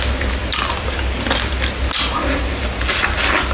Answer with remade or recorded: recorded